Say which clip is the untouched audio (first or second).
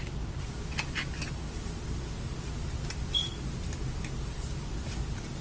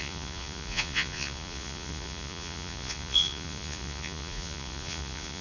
first